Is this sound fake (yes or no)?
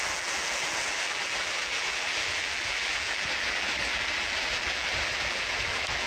yes